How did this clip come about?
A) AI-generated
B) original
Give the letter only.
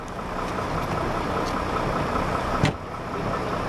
B